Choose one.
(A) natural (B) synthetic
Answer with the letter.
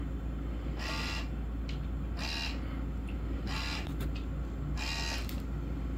A